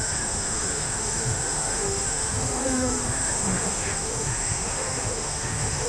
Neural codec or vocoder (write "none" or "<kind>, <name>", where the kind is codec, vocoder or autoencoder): autoencoder, DAC-VAE